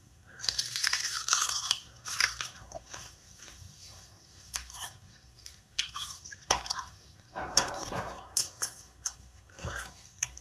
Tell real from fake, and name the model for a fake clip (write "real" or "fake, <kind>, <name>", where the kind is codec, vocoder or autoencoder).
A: fake, codec, SNAC